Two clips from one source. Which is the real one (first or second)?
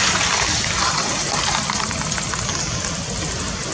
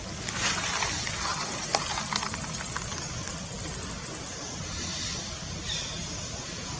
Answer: second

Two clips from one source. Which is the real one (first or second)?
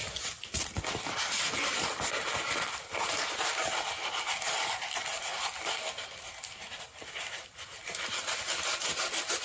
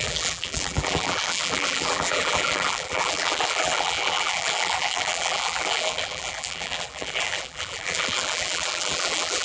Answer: first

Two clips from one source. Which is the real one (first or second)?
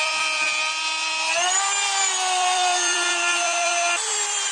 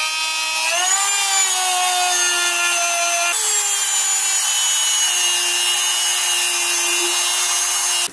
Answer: second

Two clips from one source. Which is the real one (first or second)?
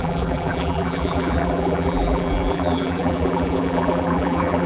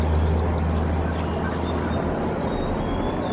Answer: second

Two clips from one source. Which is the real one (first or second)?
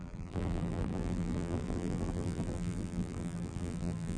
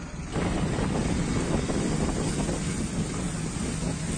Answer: second